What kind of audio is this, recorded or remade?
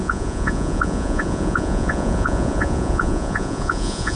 remade